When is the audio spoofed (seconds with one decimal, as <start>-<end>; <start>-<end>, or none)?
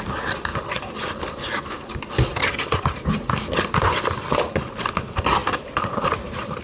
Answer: none